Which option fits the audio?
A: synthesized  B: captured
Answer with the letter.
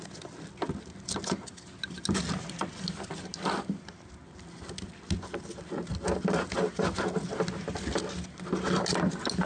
B